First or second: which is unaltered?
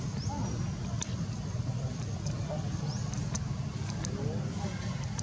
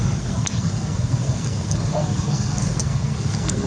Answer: first